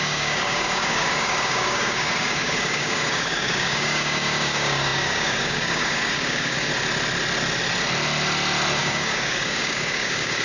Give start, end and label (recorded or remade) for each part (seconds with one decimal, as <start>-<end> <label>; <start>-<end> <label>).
0.0-6.7 remade; 6.7-8.8 recorded; 8.8-10.4 remade